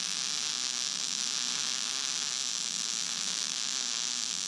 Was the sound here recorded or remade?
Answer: recorded